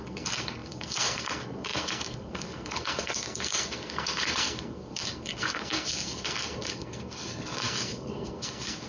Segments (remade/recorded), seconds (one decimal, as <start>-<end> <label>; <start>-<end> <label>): 0.0-8.9 remade